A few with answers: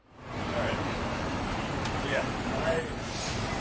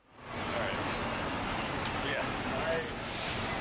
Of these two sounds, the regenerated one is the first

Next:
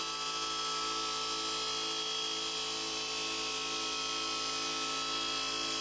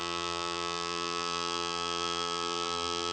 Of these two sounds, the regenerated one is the second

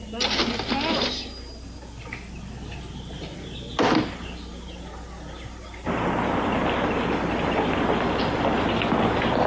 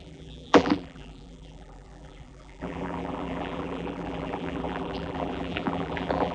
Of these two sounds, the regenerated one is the second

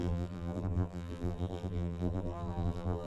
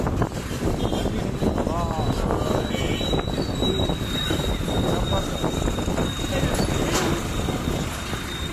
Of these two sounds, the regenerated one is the first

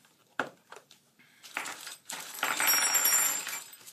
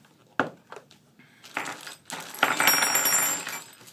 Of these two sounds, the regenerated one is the first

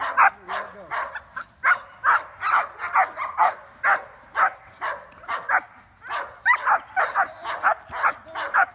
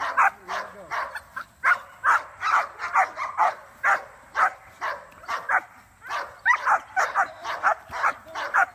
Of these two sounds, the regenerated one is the second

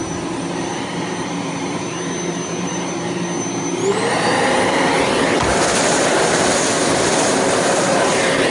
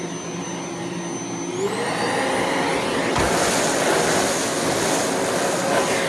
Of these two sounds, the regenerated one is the first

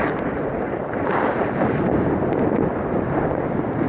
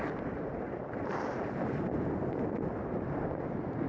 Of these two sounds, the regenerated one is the first